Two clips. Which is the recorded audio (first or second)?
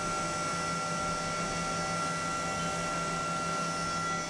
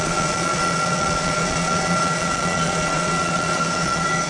first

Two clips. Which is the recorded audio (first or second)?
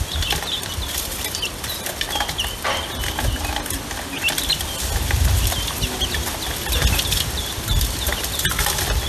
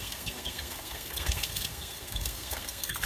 first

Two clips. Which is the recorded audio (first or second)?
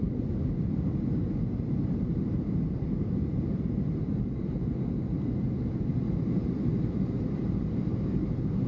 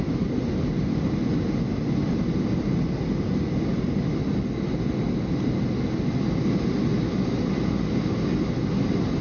second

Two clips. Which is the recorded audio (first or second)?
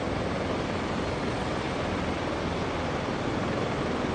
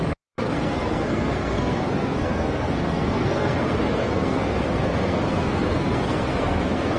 first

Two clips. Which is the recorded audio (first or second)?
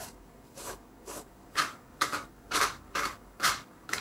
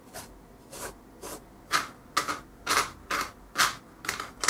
second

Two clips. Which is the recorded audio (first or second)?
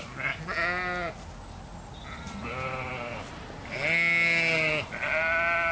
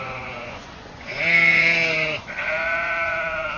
first